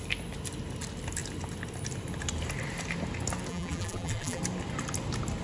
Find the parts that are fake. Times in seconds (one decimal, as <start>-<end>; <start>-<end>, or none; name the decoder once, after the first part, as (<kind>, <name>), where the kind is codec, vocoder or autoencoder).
3.5-4.4 (vocoder, BigVGAN v2)